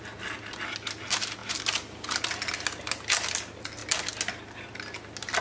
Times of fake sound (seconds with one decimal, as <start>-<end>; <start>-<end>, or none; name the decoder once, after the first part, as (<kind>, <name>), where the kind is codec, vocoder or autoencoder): none